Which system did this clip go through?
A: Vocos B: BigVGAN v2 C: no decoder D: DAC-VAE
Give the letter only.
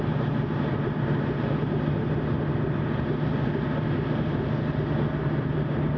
C